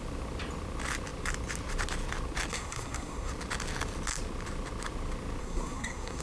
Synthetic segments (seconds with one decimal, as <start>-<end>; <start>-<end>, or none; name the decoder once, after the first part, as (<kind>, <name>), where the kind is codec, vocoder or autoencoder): 2.5-3.3 (codec, SNAC); 5.4-6.2